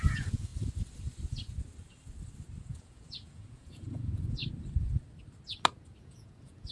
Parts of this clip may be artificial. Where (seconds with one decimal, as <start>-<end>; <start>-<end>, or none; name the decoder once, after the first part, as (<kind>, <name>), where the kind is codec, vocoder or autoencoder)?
0.0-0.5 (vocoder, Vocos); 2.6-4.4; 6.0-6.7